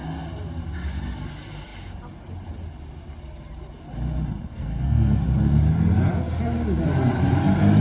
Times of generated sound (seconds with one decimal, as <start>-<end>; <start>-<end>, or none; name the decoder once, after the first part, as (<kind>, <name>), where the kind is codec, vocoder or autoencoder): 4.5-5.2 (codec, SNAC)